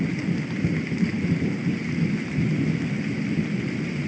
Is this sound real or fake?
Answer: real